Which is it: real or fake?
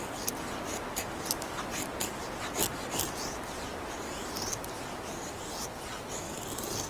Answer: real